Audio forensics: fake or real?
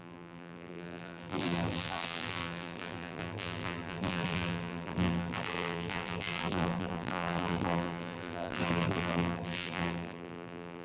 fake